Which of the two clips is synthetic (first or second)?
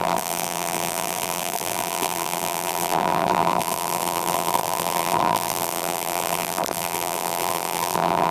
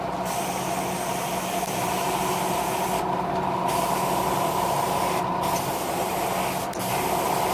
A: first